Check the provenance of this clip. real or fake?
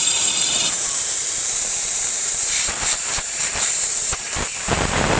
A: fake